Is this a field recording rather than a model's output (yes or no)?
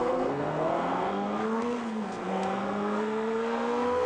no